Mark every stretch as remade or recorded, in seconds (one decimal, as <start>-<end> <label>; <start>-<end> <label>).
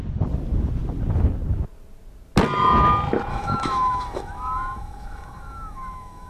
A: 0.0-3.3 recorded; 3.3-6.3 remade